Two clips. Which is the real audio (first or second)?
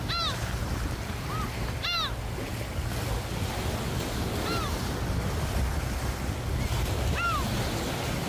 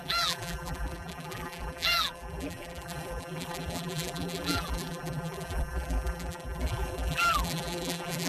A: first